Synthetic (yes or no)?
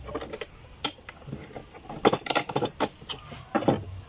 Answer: no